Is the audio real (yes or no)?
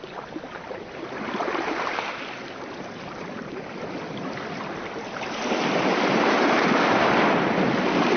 no